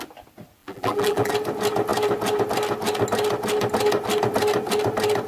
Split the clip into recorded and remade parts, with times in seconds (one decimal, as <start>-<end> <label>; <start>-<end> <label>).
0.0-0.6 recorded; 0.6-1.3 remade; 1.3-5.3 recorded